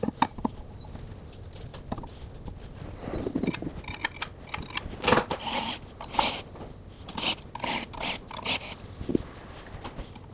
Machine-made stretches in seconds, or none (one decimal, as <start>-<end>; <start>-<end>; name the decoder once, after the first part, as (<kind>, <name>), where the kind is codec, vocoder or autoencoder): none